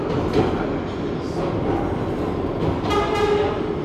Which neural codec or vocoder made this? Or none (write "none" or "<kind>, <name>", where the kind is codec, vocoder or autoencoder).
none